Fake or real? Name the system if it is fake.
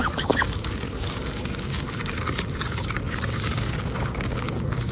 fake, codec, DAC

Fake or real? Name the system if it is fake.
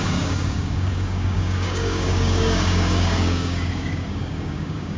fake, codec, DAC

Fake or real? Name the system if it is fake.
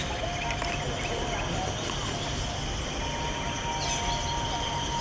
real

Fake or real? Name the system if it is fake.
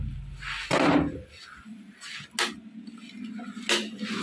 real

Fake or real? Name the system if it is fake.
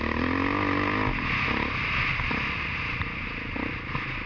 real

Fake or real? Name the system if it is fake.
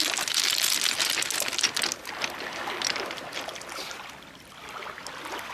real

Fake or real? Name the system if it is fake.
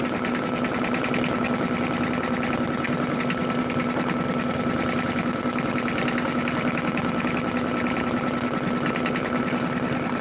real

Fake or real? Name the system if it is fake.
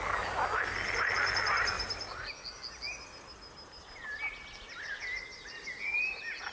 real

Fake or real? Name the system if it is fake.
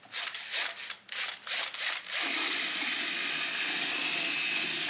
real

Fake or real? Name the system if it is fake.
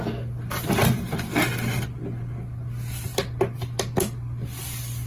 real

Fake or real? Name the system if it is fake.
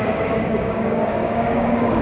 fake, codec, DAC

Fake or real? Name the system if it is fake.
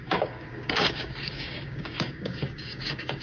fake, codec, DAC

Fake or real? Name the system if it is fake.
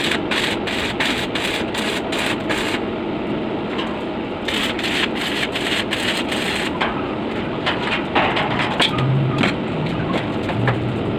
real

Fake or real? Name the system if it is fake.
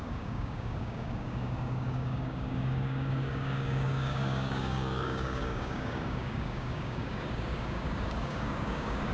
fake, codec, DAC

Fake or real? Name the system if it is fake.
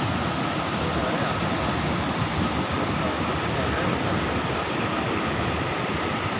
real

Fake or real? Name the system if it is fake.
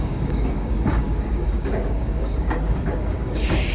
fake, codec, DAC